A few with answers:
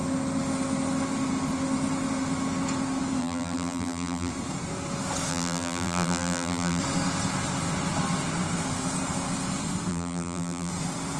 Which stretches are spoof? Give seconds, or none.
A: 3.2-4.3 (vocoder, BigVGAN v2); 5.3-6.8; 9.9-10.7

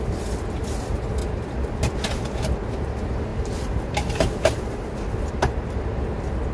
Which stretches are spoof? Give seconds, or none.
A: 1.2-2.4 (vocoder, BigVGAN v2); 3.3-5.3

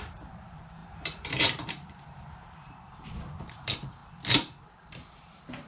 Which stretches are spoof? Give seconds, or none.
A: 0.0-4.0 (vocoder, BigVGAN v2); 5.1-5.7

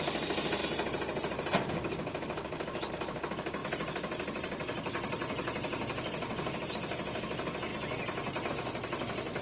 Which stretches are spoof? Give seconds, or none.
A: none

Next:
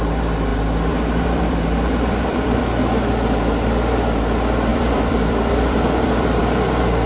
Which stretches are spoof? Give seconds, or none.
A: 0.5-2.6 (vocoder, BigVGAN v2); 4.7-6.4

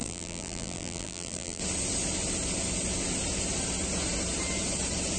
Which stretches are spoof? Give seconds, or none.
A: 0.0-1.6 (vocoder, BigVGAN v2)

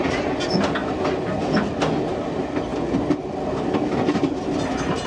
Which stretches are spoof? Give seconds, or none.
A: none

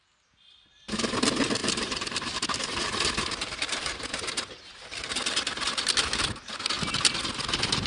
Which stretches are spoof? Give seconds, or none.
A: 1.6-5.0 (vocoder, BigVGAN v2)